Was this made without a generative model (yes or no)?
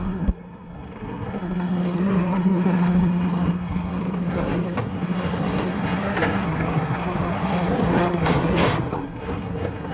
no